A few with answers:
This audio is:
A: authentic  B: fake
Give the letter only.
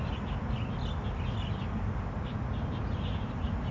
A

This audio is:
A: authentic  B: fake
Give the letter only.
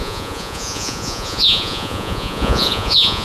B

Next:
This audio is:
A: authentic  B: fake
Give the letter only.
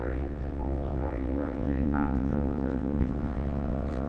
B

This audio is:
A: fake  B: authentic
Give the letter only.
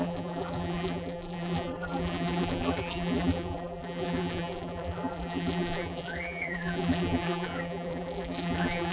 A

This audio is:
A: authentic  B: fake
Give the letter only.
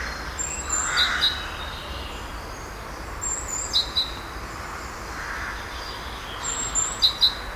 A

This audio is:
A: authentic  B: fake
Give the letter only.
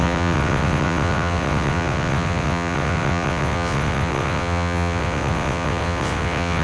B